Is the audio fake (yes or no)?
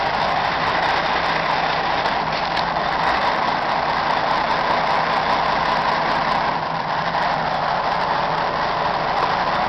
no